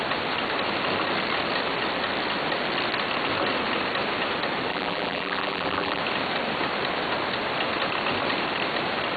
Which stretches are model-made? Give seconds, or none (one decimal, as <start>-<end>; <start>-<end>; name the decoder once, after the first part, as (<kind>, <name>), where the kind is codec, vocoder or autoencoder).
4.7-6.0 (vocoder, BigVGAN v2)